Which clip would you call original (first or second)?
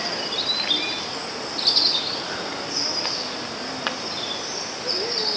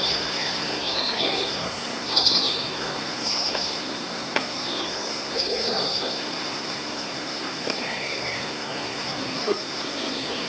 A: first